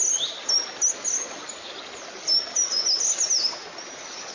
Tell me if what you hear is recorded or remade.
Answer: recorded